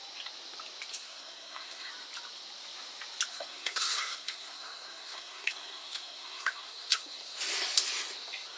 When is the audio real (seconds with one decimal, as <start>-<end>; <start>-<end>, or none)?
0.0-0.9; 1.9-3.3; 7.4-8.6